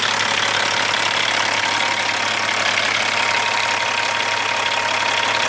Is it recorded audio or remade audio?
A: recorded